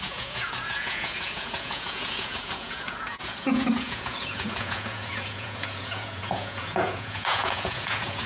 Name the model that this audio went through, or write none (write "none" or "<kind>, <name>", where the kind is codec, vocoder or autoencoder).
vocoder, Vocos